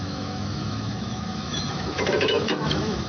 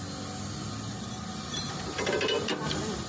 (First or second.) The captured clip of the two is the second